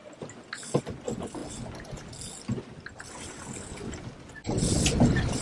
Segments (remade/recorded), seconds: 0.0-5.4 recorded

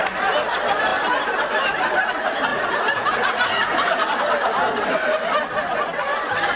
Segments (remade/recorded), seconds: 0.0-2.5 recorded; 2.5-4.2 remade; 4.2-6.6 recorded

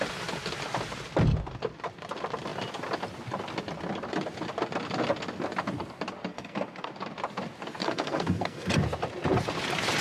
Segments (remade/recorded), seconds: 0.0-6.3 recorded; 6.3-6.9 remade; 6.9-7.8 recorded; 7.8-8.7 remade; 8.7-10.0 recorded

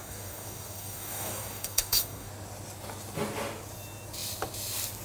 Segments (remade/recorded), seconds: 0.0-2.3 remade; 2.3-5.0 recorded

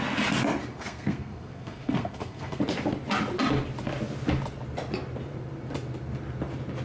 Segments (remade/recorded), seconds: 0.0-0.7 recorded; 0.7-2.6 remade; 2.6-6.8 recorded

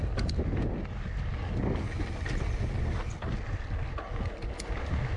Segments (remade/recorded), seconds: 0.0-5.2 recorded

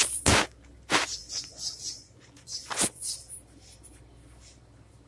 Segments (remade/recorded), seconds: 0.0-1.2 recorded; 1.2-3.2 remade; 3.2-5.1 recorded